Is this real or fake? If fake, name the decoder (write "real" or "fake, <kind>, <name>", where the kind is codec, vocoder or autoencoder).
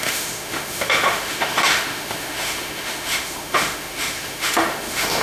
fake, autoencoder, DAC-VAE